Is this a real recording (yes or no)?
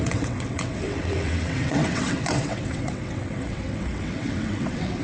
no